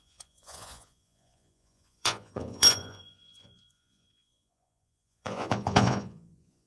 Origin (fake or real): fake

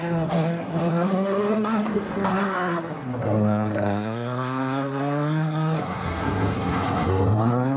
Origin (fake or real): fake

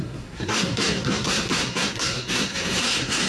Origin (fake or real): fake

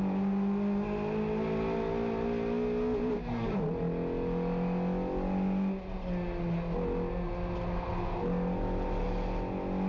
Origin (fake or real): real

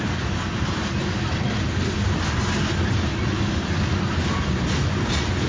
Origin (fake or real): real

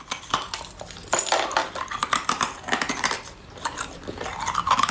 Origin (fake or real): real